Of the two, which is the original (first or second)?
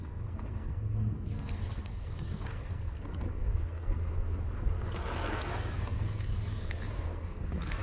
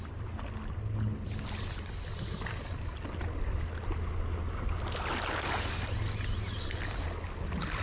second